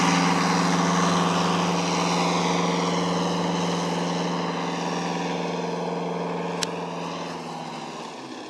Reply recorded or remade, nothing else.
recorded